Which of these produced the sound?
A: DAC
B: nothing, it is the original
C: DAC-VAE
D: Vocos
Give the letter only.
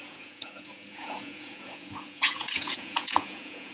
D